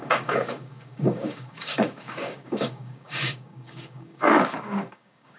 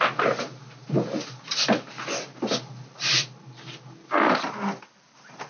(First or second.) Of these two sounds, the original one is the second